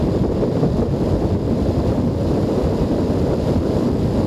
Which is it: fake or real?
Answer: real